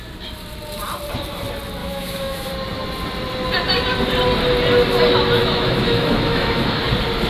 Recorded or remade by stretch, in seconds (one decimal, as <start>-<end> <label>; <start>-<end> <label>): 0.0-1.8 recorded; 1.8-2.5 remade; 2.5-5.4 recorded; 5.4-6.8 remade; 6.8-7.3 recorded